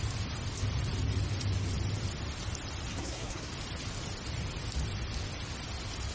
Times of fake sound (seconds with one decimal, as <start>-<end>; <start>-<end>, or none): 2.9-3.5